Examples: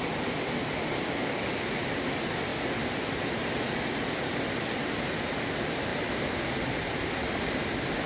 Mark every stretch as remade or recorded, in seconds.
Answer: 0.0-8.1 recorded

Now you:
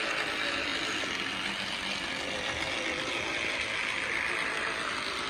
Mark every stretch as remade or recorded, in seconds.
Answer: 0.0-5.3 recorded